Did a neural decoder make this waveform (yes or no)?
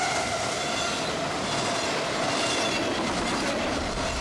no